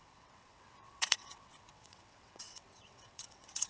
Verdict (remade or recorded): remade